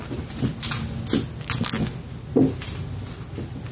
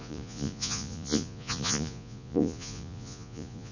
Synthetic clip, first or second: second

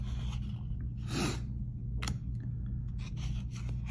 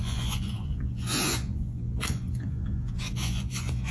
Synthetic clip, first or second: second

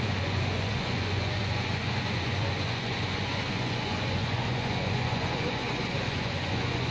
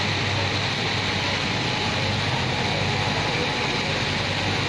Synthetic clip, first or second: first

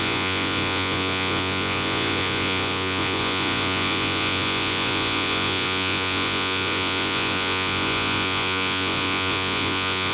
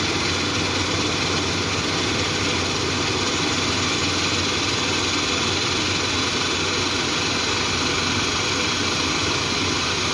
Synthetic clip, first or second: first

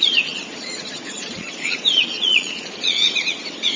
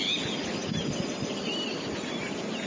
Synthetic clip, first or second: first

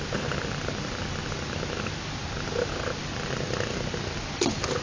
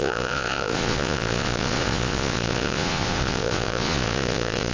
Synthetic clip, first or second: second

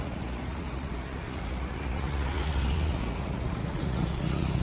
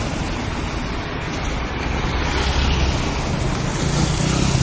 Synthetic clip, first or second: first